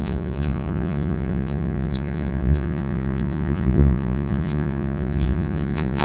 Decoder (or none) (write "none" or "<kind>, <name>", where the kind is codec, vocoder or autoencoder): vocoder, Vocos